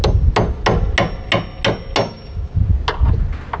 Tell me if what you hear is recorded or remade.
recorded